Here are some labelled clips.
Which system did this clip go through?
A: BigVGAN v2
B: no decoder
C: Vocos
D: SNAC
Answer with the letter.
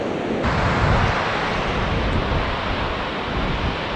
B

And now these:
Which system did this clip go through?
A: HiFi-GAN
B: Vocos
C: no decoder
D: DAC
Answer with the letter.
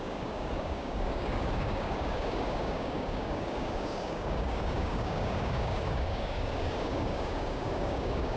D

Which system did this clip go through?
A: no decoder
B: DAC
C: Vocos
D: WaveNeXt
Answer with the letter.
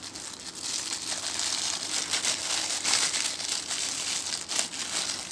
A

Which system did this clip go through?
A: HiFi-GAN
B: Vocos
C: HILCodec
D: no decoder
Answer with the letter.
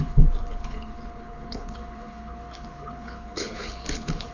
C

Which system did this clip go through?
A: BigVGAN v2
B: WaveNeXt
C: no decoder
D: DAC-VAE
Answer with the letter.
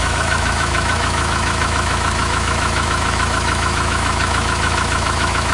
D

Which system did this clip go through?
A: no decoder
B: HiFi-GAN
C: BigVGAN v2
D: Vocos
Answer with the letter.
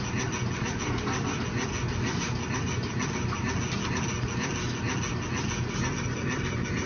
A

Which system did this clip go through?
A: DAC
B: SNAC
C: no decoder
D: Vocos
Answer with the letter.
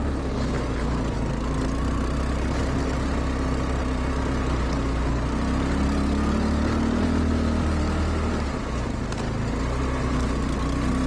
C